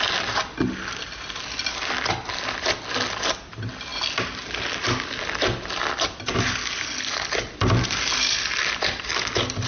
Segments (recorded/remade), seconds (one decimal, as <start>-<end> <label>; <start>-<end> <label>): 0.0-9.7 recorded